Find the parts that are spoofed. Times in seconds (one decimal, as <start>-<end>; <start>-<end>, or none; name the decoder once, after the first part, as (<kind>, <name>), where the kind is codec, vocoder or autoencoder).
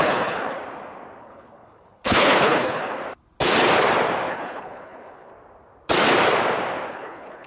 0.0-0.6 (codec, HILCodec); 1.2-3.0; 4.3-5.3; 6.9-7.5